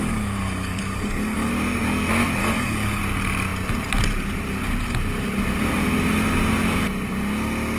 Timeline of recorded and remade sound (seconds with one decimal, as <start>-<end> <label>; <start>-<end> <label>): 0.0-1.5 remade; 1.5-2.4 recorded; 2.4-3.0 remade; 3.0-7.8 recorded